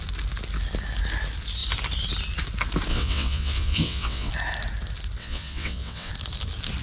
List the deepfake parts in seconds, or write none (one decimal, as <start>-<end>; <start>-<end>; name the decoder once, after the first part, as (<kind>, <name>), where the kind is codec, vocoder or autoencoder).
2.9-4.3 (vocoder, WaveNeXt); 5.2-6.1